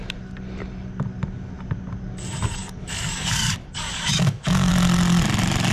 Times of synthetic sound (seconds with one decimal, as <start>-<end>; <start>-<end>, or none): 2.6-4.7